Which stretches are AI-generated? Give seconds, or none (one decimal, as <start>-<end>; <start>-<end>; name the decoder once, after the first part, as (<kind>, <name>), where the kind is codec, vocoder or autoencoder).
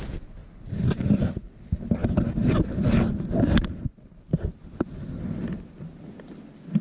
none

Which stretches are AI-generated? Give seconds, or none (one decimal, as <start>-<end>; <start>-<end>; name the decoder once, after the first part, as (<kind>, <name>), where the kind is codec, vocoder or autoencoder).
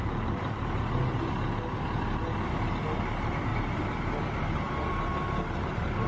none